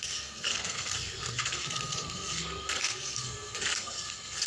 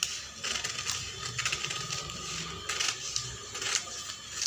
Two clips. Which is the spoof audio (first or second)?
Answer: first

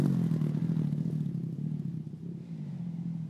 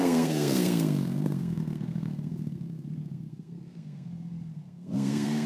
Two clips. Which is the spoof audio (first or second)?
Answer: second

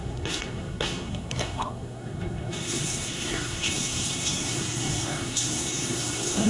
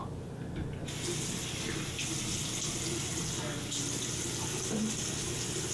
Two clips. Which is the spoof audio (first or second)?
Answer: first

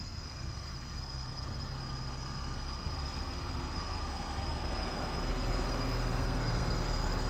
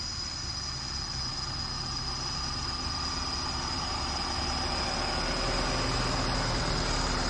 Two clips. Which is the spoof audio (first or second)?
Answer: first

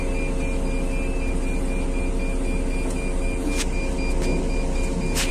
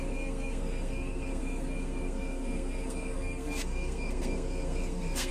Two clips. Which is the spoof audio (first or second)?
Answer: second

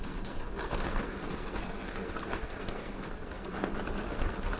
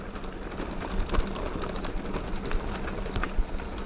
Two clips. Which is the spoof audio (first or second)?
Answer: first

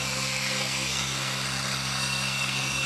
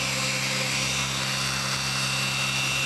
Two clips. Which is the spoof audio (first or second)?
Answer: first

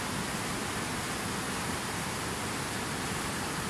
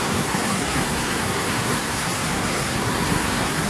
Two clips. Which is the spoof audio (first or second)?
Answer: second